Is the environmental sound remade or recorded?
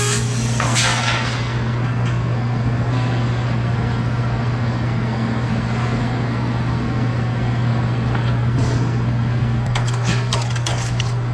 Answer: remade